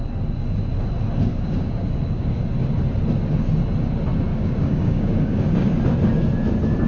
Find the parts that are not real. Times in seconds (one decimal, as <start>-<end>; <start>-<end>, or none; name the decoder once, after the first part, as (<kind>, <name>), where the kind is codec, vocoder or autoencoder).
1.3-2.4 (codec, DAC); 4.3-5.8